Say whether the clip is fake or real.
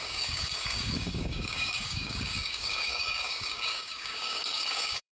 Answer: fake